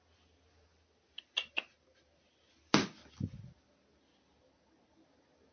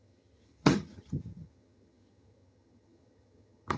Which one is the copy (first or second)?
second